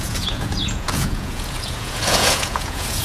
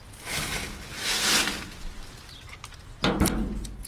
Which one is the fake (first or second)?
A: first